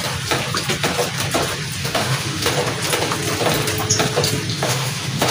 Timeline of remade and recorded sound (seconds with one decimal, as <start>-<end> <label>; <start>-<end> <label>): 0.0-1.8 recorded; 1.8-2.5 remade; 2.5-4.5 recorded; 4.5-5.3 remade

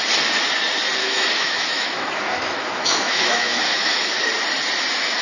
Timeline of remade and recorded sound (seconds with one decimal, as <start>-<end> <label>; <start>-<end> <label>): 0.0-1.0 recorded; 1.0-4.0 remade; 4.0-5.2 recorded